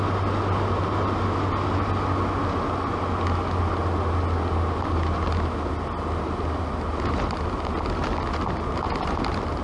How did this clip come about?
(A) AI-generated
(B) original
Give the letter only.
B